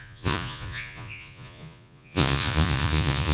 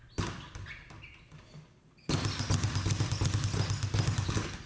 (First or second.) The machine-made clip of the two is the first